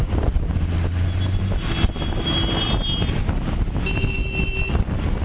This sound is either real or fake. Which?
real